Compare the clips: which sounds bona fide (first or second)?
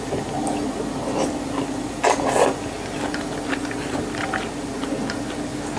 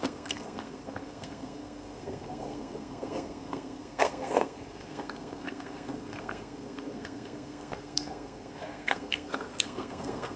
first